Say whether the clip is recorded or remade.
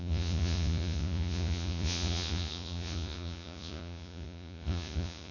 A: remade